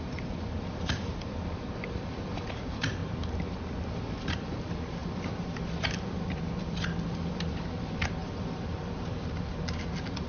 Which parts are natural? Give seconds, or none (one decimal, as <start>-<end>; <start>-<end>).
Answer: 3.0-4.3